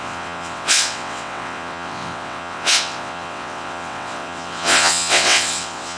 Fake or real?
fake